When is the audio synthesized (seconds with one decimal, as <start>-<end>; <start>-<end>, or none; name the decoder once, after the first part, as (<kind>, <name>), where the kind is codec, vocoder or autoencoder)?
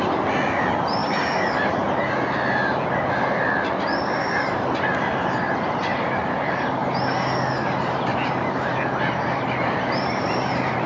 5.9-7.0 (vocoder, BigVGAN v2); 8.1-10.9